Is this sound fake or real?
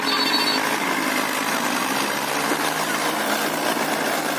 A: real